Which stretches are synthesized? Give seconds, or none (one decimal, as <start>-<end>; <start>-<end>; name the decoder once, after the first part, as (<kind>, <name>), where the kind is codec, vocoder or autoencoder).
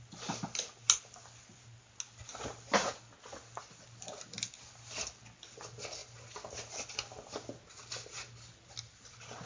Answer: none